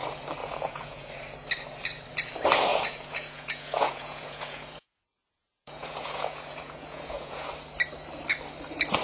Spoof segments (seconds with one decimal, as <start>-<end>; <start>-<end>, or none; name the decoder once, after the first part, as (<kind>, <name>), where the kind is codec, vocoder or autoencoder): 0.4-1.1 (vocoder, Vocos); 2.7-7.5